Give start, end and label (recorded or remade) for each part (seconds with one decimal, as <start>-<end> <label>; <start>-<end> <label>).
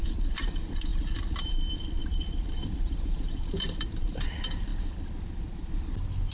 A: 0.0-4.7 remade; 4.7-6.3 recorded